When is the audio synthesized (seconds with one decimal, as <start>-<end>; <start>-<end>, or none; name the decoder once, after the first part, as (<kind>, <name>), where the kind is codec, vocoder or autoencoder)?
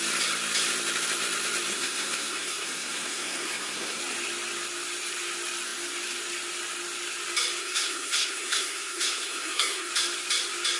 1.7-4.0 (codec, SNAC); 7.6-9.9